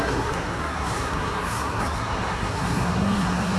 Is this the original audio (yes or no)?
no